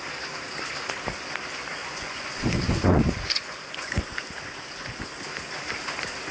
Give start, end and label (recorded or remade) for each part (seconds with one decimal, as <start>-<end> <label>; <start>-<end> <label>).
0.0-1.8 recorded; 1.8-4.0 remade; 4.0-6.3 recorded